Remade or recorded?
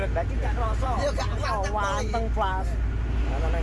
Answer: recorded